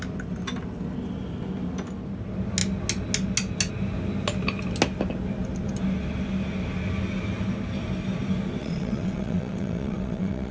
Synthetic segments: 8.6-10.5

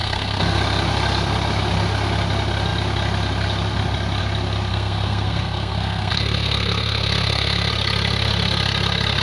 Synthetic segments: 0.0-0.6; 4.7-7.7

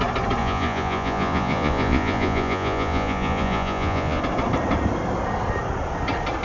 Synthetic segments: 0.4-4.2